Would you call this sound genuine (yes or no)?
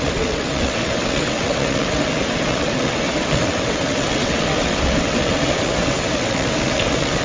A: no